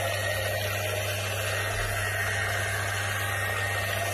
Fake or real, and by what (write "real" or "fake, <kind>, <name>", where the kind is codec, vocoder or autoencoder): real